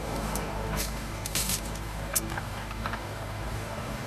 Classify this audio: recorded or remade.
remade